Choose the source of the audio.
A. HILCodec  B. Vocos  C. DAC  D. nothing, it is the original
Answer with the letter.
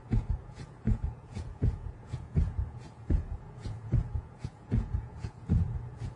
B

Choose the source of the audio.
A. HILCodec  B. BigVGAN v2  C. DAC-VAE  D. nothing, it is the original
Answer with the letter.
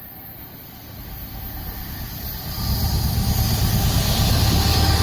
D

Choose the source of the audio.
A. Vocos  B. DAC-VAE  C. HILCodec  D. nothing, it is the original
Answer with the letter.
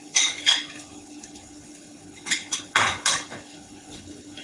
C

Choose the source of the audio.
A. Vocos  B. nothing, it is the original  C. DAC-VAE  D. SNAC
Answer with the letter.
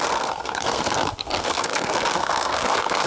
D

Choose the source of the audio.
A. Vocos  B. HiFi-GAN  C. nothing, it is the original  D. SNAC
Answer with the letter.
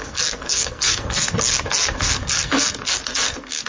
D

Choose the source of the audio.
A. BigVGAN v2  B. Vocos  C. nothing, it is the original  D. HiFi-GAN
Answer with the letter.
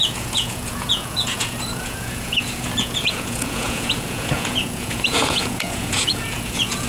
B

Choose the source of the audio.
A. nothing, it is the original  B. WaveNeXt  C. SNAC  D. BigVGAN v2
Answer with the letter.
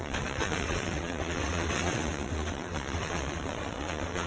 B